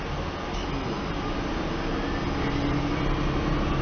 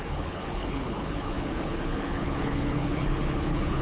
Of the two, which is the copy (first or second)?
second